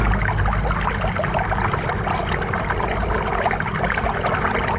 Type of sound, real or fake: real